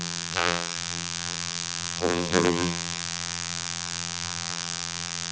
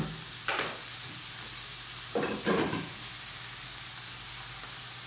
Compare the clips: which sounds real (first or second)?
second